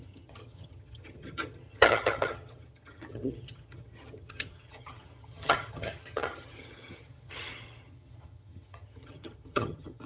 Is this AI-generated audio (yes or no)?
yes